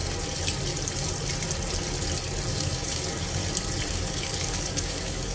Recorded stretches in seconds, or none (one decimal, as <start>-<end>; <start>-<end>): 0.0-2.5; 3.4-3.9

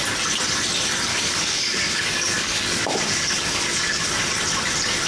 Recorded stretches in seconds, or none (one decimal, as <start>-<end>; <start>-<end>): 0.0-1.1; 4.2-5.1

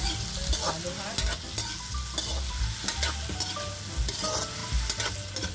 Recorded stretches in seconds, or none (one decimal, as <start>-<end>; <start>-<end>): 0.0-5.5

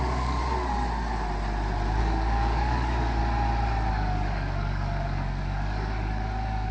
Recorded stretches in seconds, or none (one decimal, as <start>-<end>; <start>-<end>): 0.4-2.0; 3.2-3.9